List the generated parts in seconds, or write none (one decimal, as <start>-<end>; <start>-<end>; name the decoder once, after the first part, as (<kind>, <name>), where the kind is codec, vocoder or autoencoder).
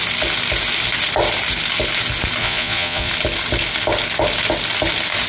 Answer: 2.4-3.1 (vocoder, Vocos)